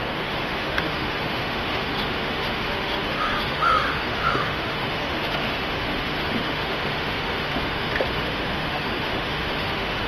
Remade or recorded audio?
remade